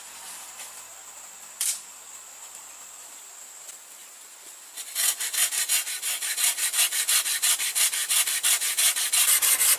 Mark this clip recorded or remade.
recorded